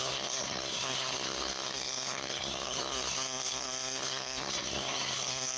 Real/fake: fake